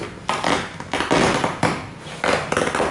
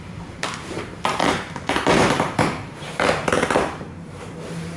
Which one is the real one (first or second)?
first